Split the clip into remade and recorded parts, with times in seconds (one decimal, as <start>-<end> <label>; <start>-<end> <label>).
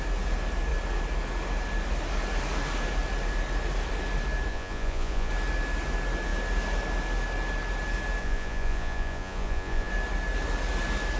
0.0-4.5 recorded; 4.5-5.3 remade; 5.3-8.2 recorded; 8.2-9.9 remade; 9.9-11.2 recorded